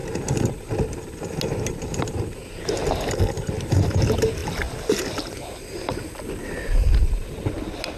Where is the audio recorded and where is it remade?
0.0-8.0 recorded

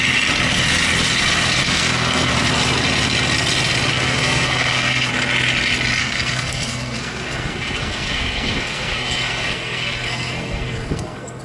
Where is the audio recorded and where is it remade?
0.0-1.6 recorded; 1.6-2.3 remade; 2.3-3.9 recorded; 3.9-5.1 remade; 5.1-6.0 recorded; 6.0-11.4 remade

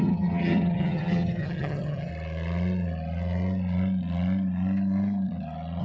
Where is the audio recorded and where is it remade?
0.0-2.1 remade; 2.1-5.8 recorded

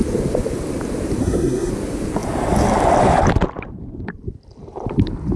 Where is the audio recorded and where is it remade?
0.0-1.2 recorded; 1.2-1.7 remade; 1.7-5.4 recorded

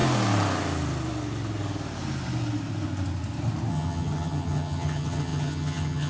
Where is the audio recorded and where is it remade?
0.0-3.7 recorded; 3.7-6.1 remade

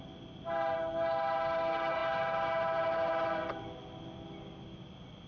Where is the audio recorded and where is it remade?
0.0-5.3 recorded

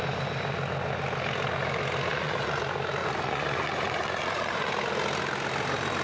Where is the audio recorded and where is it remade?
0.0-2.1 recorded; 2.1-2.6 remade; 2.6-3.0 recorded; 3.0-4.7 remade; 4.7-6.0 recorded

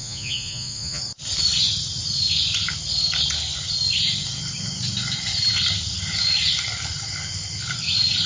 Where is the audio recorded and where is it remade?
0.0-1.0 remade; 1.0-8.3 recorded